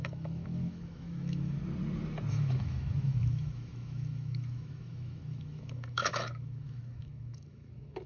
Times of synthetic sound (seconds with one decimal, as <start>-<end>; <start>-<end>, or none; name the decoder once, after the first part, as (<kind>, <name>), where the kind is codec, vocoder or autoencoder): 0.0-1.6 (autoencoder, DAC-VAE); 2.3-8.1